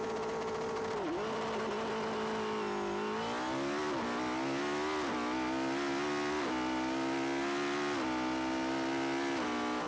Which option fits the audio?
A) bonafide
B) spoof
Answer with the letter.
A